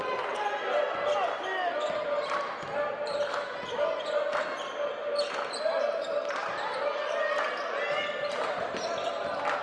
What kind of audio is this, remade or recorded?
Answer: recorded